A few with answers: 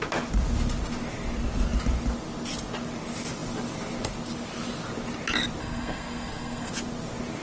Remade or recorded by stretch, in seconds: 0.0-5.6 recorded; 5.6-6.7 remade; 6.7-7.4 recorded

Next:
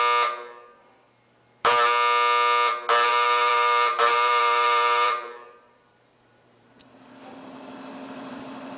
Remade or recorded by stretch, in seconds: 0.0-3.1 recorded; 3.1-7.1 remade; 7.1-8.8 recorded

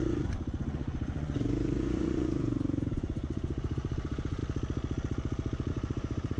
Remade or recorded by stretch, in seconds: 0.0-4.4 remade; 4.4-5.7 recorded; 5.7-6.4 remade

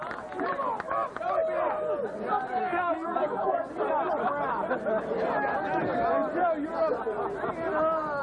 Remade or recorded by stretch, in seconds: 0.0-2.6 recorded; 2.6-3.7 remade; 3.7-8.2 recorded

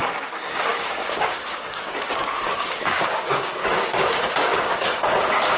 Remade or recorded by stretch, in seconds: 0.0-5.6 remade